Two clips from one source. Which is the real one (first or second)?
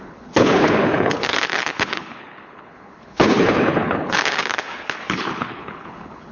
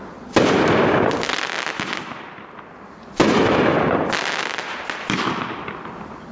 second